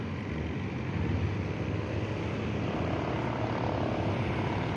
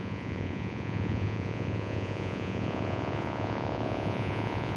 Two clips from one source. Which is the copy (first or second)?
second